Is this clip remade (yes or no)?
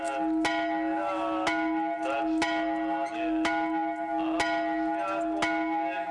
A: no